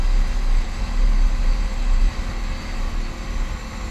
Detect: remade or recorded recorded